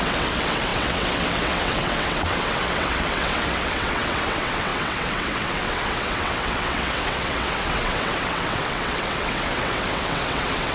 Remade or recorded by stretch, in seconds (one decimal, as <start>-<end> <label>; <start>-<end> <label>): 0.0-10.7 remade